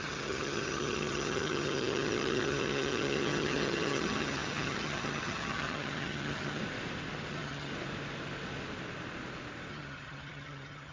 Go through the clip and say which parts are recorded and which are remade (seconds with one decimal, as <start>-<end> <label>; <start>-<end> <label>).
0.0-6.6 remade; 6.6-7.3 recorded; 7.3-7.7 remade; 7.7-9.7 recorded; 9.7-10.9 remade

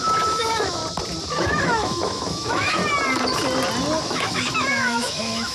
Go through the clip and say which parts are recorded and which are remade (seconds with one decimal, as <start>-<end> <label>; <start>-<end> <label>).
0.0-0.8 remade; 0.8-1.3 recorded; 1.3-2.8 remade; 2.8-4.0 recorded; 4.0-5.5 remade